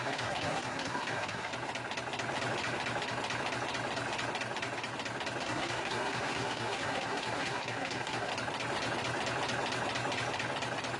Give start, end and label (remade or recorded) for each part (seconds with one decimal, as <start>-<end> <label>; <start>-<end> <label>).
0.0-1.5 remade; 1.5-5.4 recorded; 5.4-8.3 remade; 8.3-11.0 recorded